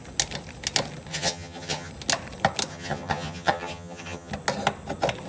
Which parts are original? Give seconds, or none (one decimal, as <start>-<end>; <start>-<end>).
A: 0.0-1.1; 1.9-2.7; 4.3-5.3